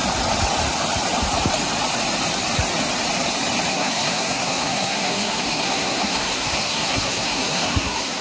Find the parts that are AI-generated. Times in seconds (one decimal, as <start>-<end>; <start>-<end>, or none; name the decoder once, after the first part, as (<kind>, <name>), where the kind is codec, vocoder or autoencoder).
3.7-8.2 (codec, SNAC)